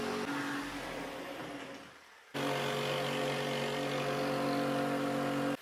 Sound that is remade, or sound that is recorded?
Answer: recorded